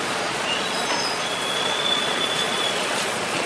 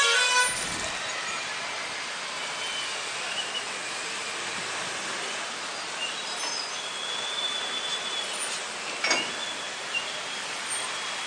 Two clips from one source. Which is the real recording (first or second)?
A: second